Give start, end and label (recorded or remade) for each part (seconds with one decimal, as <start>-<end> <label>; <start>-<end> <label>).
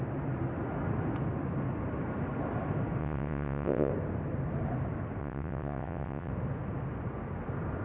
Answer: 0.0-3.0 recorded; 3.0-3.9 remade; 3.9-5.2 recorded; 5.2-6.3 remade; 6.3-7.8 recorded